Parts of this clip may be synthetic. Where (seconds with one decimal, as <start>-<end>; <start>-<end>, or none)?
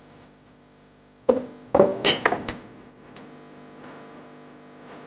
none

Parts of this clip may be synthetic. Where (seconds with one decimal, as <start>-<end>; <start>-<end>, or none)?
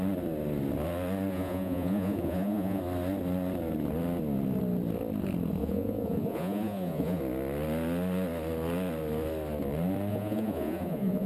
1.3-2.8; 5.6-7.2; 10.1-11.3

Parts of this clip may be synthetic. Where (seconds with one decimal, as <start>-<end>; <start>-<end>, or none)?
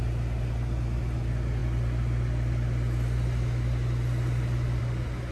none